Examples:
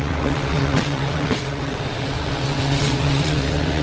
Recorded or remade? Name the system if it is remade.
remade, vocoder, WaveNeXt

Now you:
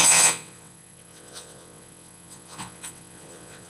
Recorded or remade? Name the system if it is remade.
remade, vocoder, WaveNeXt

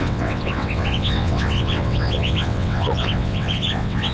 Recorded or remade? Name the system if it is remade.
remade, vocoder, WaveNeXt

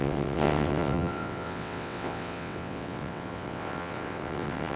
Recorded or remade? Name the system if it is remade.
remade, vocoder, WaveNeXt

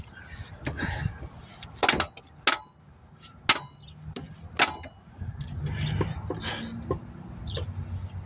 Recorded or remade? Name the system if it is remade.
recorded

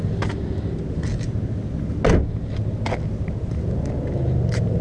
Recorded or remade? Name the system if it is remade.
recorded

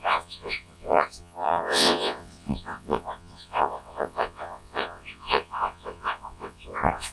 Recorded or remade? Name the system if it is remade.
remade, vocoder, WaveNeXt